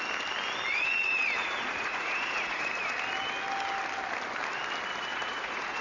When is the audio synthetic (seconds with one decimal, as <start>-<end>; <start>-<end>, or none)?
0.7-2.7; 5.1-5.8